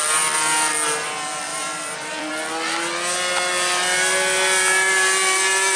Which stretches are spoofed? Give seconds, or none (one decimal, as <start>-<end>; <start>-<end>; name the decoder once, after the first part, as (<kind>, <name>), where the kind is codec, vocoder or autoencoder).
0.0-0.7 (vocoder, BigVGAN v2); 1.5-2.3